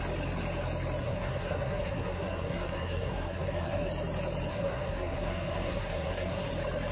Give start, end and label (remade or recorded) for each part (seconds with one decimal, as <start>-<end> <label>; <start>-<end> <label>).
0.0-1.0 recorded; 1.0-3.9 remade; 3.9-4.5 recorded; 4.5-6.5 remade; 6.5-6.9 recorded